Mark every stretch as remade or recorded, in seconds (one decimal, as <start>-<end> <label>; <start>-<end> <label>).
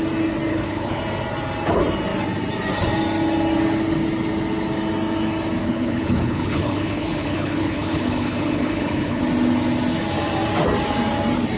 0.0-0.5 recorded; 0.5-1.0 remade; 1.0-5.6 recorded; 5.6-9.2 remade; 9.2-11.6 recorded